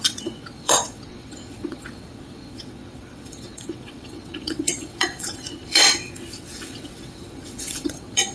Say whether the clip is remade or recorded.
remade